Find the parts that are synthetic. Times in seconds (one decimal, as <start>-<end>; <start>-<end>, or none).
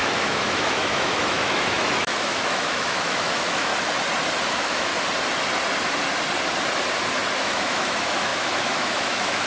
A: 0.0-3.7; 4.5-4.9; 7.4-9.5